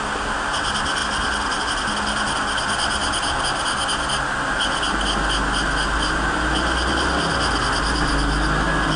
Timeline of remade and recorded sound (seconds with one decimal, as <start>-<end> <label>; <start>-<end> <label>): 0.0-9.0 recorded